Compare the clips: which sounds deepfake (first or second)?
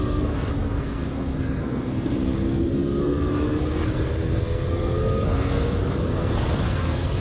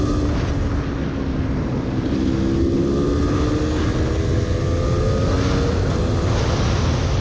first